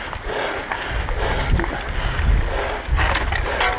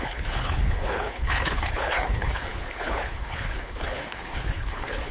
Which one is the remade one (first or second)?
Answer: second